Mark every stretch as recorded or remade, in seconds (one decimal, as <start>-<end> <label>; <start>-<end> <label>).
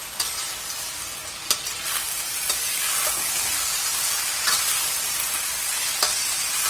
0.0-6.7 recorded